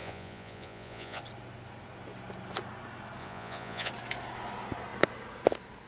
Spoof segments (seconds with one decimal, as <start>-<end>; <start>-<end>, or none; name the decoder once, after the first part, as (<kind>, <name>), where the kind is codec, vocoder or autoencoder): 0.0-1.2 (vocoder, Vocos); 3.2-3.9